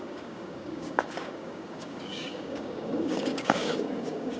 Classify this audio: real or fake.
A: fake